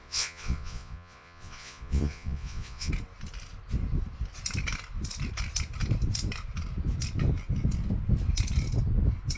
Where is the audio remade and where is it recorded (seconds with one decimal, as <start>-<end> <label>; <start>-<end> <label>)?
0.0-2.9 remade; 2.9-9.4 recorded